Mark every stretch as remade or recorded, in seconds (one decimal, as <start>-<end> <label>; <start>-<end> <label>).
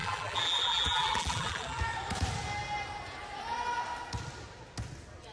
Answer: 0.0-1.8 remade; 1.8-5.3 recorded